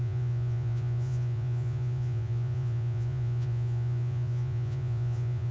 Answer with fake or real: fake